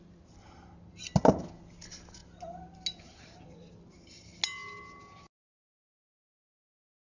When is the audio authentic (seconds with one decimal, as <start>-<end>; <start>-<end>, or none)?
0.0-7.2